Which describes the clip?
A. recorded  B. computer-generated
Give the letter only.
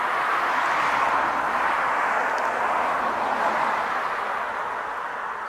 A